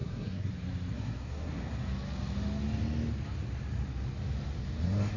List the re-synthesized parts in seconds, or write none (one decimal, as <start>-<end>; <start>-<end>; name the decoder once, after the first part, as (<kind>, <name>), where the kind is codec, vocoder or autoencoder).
0.0-0.5 (codec, SNAC); 0.9-1.7